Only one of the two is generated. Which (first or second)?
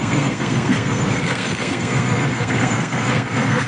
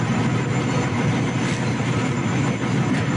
first